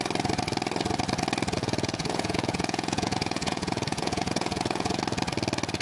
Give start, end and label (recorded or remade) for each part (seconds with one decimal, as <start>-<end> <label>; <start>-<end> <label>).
0.0-1.6 recorded; 1.6-5.0 remade; 5.0-5.8 recorded